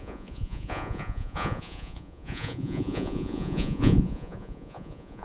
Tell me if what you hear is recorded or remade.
remade